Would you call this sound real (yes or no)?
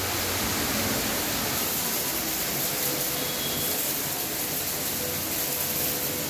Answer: yes